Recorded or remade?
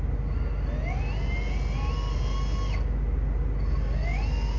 recorded